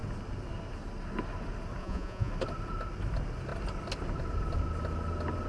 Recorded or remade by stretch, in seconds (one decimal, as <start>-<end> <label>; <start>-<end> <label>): 0.0-1.8 recorded; 1.8-2.3 remade; 2.3-5.5 recorded